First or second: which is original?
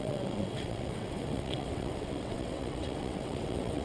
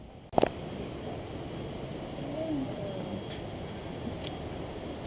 second